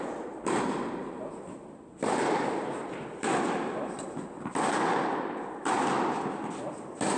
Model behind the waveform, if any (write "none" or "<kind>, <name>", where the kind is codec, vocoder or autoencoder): none